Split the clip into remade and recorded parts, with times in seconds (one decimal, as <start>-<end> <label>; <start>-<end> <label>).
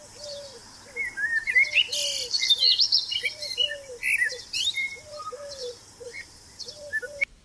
0.0-0.6 remade; 0.6-2.5 recorded; 2.5-7.4 remade